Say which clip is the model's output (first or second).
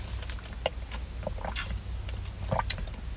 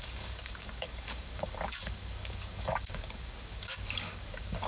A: second